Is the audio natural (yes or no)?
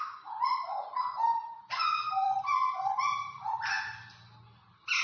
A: yes